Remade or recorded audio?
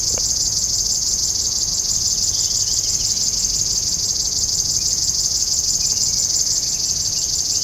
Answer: recorded